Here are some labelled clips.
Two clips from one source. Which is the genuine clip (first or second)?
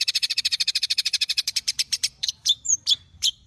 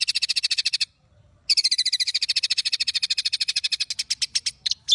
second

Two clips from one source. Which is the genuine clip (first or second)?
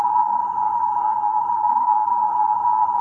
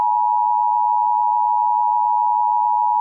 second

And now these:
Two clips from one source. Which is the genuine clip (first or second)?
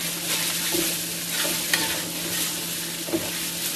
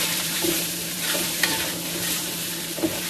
first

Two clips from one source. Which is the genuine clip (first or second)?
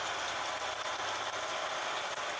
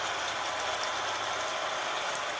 first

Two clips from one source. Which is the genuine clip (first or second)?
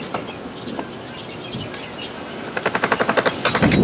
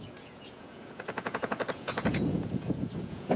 first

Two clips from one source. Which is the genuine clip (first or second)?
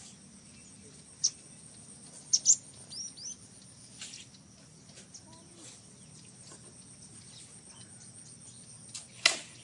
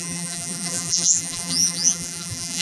first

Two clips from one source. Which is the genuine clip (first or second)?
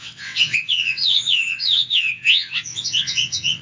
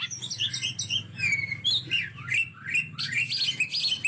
second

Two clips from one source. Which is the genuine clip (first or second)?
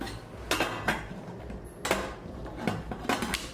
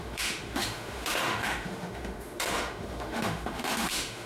first